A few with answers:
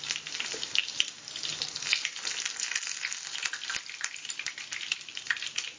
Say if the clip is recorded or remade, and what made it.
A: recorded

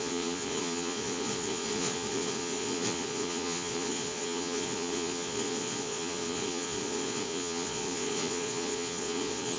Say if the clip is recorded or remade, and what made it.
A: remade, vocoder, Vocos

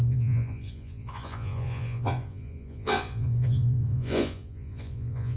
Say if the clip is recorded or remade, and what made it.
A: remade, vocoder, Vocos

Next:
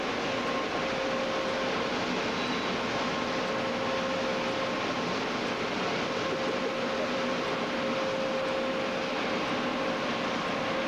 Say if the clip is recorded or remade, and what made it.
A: recorded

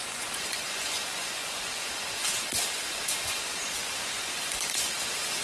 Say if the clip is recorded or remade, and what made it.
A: remade, vocoder, Vocos